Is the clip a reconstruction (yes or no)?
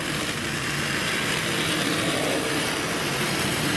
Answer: no